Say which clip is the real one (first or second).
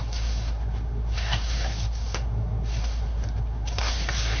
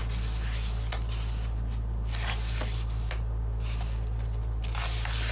second